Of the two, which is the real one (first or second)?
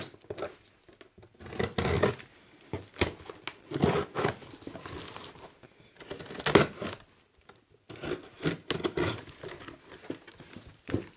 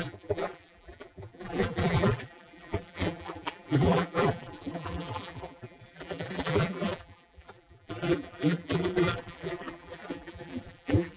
first